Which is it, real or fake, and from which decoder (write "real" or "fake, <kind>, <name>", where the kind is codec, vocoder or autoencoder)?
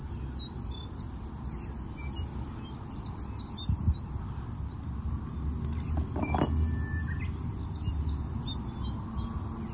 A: real